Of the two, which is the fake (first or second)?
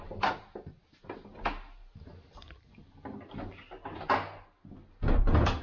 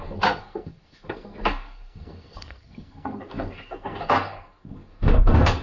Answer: second